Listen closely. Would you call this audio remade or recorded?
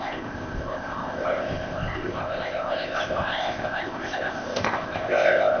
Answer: remade